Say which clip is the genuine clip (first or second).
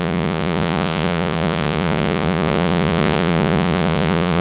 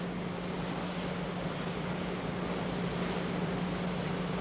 second